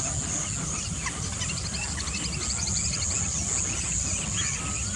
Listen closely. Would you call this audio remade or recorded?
recorded